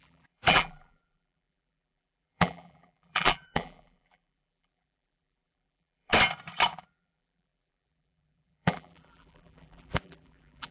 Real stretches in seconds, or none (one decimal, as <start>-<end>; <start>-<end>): 6.1-6.7